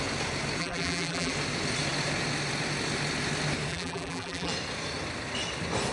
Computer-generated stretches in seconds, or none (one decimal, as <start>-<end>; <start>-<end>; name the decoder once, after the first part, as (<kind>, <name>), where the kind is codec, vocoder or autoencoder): 0.6-1.3 (vocoder, BigVGAN v2); 3.7-4.5